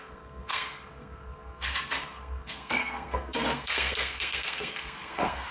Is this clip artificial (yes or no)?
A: yes